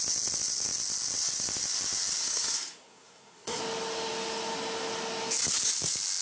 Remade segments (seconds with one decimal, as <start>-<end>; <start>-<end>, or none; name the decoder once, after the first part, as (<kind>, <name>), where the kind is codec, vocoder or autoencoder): 2.2-3.6 (codec, SNAC)